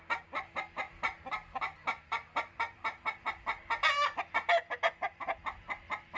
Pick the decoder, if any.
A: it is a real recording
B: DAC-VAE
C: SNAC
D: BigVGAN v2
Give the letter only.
A